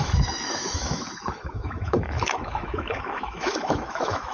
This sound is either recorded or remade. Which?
remade